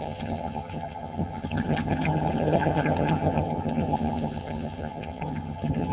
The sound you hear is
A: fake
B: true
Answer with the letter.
A